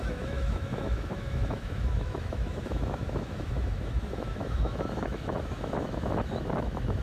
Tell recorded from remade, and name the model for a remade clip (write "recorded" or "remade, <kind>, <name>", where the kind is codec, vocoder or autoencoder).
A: remade, autoencoder, DAC-VAE